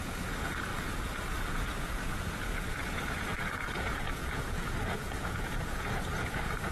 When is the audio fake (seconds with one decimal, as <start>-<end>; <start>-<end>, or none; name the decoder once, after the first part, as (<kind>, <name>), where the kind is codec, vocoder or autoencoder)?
0.0-6.7 (vocoder, Vocos)